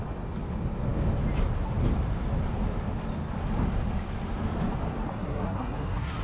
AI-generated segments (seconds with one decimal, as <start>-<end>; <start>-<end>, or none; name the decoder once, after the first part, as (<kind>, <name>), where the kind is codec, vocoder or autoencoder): 5.1-6.2 (codec, SNAC)